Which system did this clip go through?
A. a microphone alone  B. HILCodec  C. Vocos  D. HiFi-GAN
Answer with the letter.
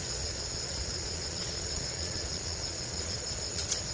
C